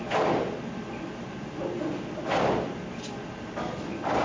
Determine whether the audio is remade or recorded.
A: recorded